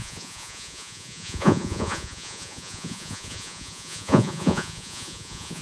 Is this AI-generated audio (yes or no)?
yes